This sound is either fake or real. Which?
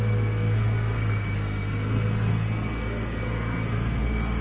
fake